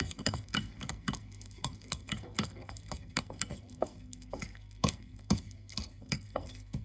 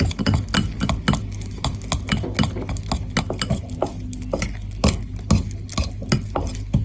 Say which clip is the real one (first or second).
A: second